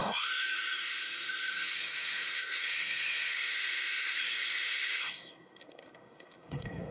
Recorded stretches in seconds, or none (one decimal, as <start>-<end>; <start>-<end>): none